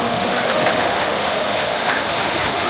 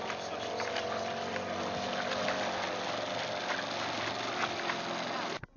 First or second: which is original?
second